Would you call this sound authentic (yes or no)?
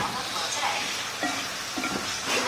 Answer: yes